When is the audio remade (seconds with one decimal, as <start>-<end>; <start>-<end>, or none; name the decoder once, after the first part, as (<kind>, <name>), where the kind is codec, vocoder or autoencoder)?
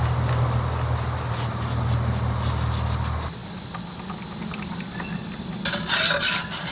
none